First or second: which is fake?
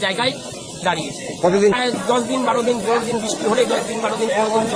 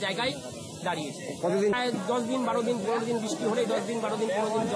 first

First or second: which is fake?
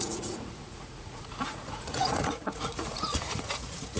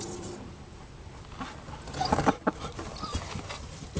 first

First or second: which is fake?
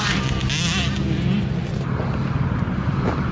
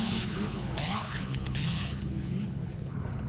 second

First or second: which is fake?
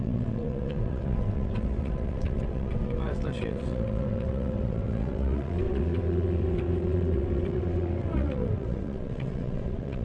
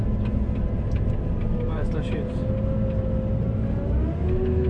first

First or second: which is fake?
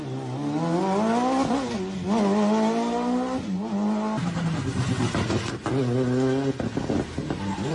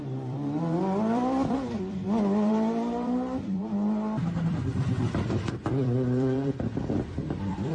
second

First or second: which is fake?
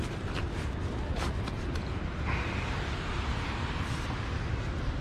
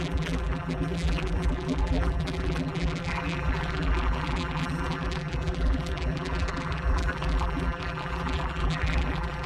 second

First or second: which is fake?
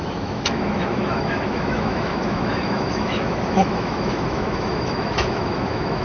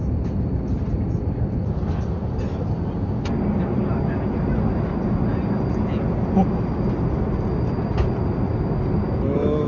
first